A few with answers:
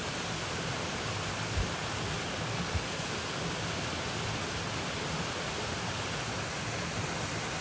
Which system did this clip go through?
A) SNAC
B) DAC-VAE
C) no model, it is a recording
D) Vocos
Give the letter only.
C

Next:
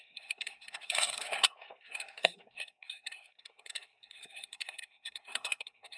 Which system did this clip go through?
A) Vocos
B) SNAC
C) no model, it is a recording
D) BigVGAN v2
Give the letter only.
B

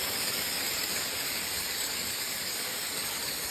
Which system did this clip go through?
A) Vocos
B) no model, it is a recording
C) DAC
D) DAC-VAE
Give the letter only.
C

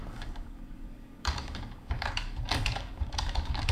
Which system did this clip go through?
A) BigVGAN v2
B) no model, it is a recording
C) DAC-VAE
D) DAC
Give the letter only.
D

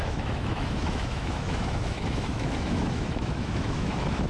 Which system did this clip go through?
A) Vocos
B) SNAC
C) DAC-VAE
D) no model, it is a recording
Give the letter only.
C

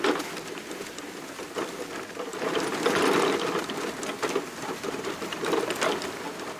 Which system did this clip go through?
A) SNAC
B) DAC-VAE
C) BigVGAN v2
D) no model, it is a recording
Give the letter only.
D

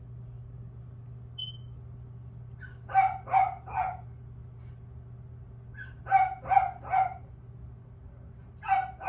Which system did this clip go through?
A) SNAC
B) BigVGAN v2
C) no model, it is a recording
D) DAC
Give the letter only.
C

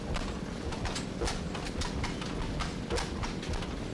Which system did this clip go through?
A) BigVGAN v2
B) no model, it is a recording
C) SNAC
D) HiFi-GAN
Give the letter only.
B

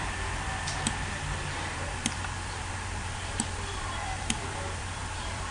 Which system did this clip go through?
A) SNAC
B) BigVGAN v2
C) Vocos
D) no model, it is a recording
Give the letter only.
B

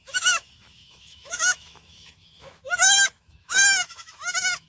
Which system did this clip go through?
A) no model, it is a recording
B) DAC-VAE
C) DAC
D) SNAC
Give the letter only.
B